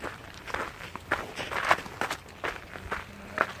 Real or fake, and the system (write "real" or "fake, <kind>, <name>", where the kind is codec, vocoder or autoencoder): real